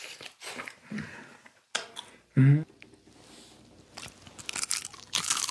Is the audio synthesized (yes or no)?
no